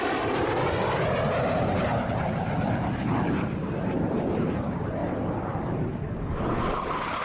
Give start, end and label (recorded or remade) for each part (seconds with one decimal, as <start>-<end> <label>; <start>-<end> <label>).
0.0-5.0 remade; 5.0-6.6 recorded; 6.6-7.2 remade